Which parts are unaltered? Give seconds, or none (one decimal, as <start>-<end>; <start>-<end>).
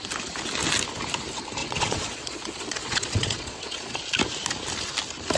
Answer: 0.0-1.6; 4.0-5.4